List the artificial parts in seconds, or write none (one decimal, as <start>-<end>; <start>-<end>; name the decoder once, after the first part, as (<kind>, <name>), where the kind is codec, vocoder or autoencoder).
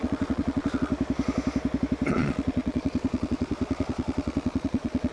0.0-0.9 (vocoder, Vocos); 2.1-5.1